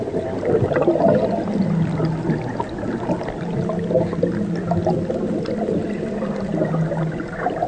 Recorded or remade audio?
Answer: recorded